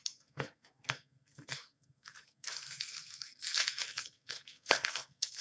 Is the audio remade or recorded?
remade